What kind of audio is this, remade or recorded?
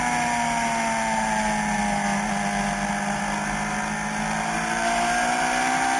recorded